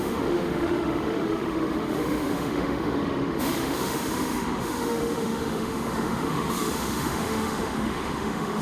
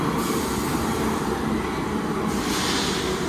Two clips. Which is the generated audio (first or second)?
first